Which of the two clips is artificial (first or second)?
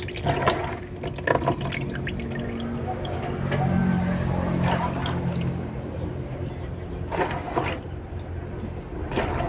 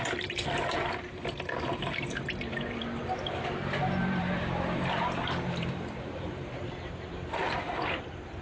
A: second